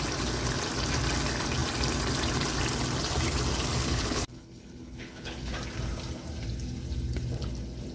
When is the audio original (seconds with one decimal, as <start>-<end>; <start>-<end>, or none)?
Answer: 0.0-3.8; 5.5-7.9